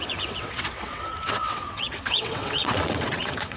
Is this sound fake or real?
fake